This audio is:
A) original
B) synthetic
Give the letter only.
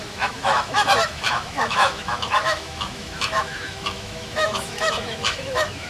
B